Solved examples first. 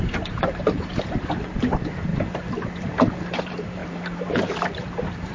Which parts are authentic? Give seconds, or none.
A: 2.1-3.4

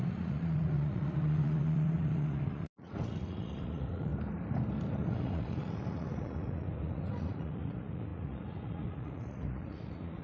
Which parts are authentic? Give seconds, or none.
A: 4.1-4.9

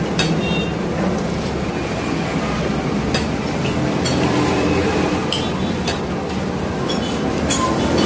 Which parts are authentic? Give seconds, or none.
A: 5.2-6.4

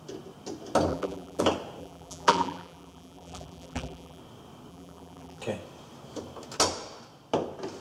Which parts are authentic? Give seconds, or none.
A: 0.0-0.9; 1.4-1.8; 4.2-4.7; 5.4-7.8

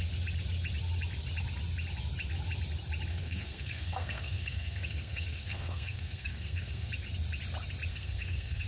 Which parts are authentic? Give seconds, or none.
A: 0.0-3.1; 6.9-7.9

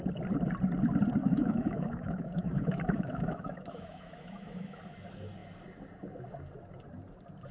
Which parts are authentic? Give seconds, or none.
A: 0.0-1.2; 4.8-7.5